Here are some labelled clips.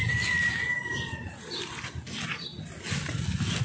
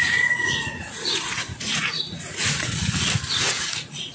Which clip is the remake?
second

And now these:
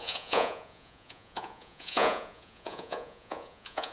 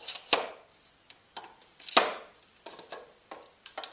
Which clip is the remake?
first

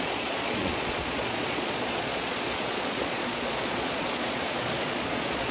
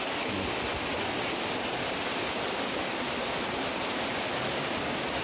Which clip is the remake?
first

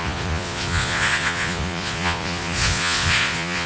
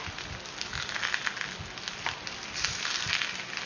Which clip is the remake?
first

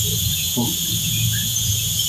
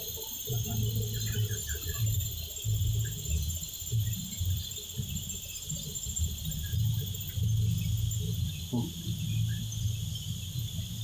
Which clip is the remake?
first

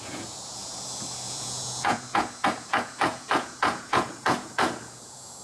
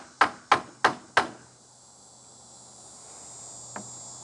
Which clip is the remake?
first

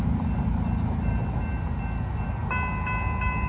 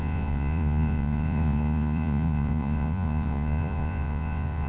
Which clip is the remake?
second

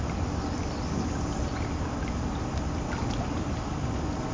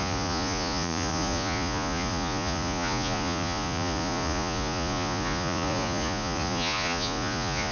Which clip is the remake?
second